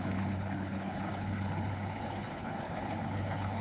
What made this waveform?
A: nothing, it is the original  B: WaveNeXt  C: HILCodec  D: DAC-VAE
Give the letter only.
C